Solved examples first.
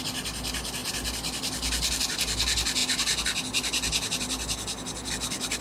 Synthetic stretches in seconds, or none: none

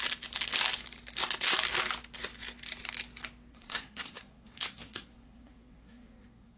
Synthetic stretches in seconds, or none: 3.5-6.6 (codec, SNAC)